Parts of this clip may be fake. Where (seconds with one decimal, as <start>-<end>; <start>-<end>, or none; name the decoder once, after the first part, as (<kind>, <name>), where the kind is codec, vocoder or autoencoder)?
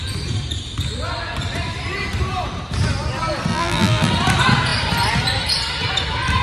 3.5-4.1 (vocoder, BigVGAN v2)